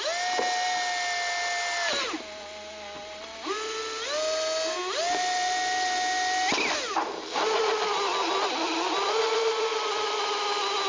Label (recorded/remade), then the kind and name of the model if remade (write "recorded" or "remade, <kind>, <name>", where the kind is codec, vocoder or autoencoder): recorded